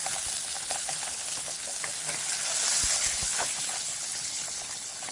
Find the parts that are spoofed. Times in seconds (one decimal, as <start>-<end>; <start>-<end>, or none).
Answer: 0.6-1.7; 2.9-5.1